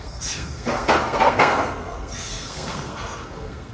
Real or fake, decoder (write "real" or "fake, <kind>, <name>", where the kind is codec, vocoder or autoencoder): fake, codec, SNAC